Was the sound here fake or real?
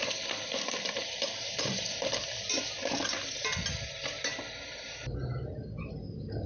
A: fake